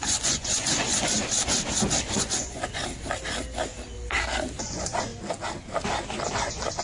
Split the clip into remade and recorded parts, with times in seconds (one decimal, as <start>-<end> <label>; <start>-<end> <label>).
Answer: 0.0-1.2 remade; 1.2-2.0 recorded; 2.0-2.8 remade; 2.8-4.6 recorded; 4.6-5.1 remade; 5.1-6.3 recorded; 6.3-6.8 remade